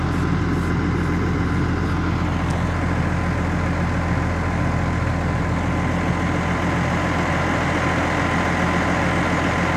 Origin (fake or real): real